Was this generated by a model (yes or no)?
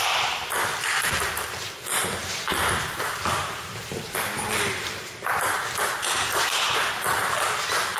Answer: no